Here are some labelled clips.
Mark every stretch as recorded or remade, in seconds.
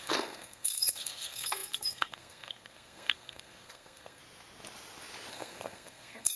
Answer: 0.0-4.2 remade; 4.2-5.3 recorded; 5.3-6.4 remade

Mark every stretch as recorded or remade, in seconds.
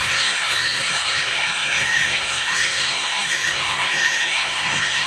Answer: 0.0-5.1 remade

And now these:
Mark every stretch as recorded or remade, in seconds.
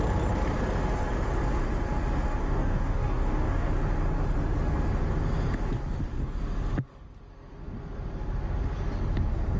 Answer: 0.0-2.4 recorded; 2.4-3.7 remade; 3.7-9.6 recorded